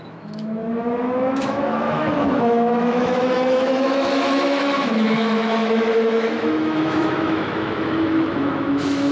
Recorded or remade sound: remade